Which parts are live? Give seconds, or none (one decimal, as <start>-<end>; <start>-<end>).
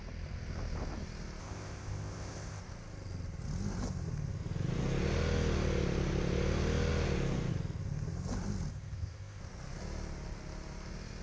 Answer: 0.0-1.4; 2.6-8.7; 9.4-11.2